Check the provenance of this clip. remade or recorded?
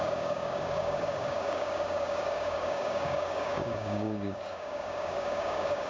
remade